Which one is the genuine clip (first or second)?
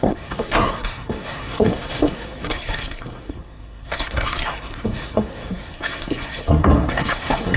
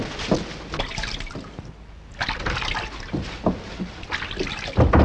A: second